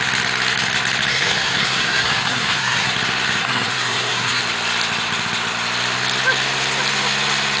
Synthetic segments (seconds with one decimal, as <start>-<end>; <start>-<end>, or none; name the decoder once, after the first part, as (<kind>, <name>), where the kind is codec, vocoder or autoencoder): 1.1-2.9 (codec, SNAC); 3.4-4.4